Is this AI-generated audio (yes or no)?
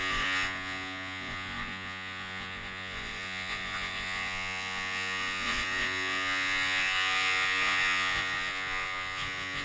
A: yes